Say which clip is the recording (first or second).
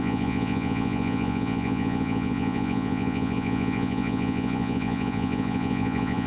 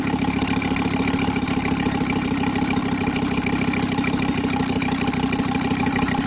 second